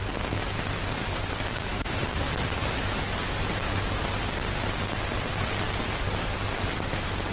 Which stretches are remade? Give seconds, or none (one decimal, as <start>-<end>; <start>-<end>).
none